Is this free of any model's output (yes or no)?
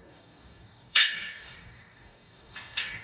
no